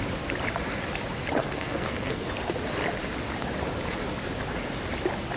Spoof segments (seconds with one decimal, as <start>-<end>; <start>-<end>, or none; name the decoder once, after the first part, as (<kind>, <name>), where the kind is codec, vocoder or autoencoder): 1.4-2.3 (codec, SNAC)